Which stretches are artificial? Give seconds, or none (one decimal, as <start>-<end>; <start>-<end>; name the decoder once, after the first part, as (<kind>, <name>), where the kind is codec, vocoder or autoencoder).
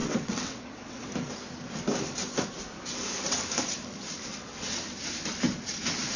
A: 0.0-1.1 (vocoder, WaveNeXt); 4.3-4.8